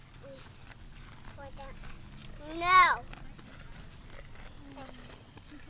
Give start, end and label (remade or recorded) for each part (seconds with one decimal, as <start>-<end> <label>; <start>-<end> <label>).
0.0-5.7 recorded